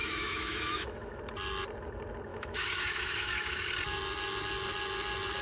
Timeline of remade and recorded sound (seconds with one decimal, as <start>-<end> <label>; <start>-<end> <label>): 0.0-1.2 remade; 1.2-2.3 recorded; 2.3-3.7 remade; 3.7-5.4 recorded